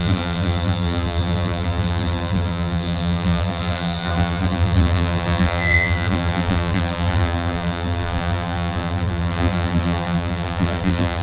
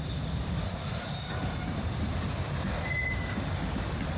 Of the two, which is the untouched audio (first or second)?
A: second